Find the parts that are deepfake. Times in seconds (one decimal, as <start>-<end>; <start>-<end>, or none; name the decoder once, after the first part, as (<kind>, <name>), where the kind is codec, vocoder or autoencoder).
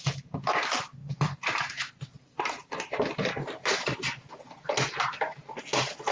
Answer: 1.0-4.7 (vocoder, BigVGAN v2)